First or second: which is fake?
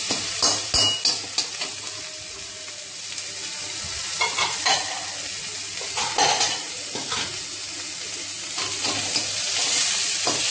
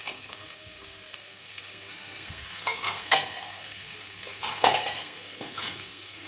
second